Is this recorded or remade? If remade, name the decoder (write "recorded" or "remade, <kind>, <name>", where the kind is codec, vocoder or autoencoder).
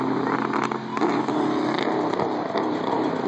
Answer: recorded